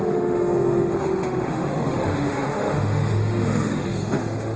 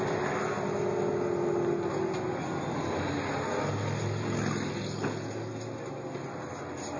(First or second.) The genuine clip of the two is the second